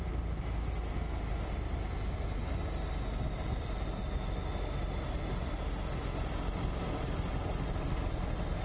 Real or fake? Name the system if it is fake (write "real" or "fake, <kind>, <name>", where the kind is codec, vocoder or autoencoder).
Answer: real